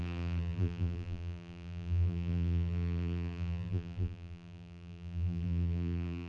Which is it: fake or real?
fake